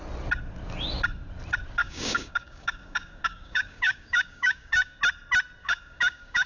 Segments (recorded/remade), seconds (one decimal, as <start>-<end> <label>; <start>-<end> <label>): 0.0-1.8 recorded; 1.8-5.0 remade; 5.0-5.6 recorded; 5.6-6.5 remade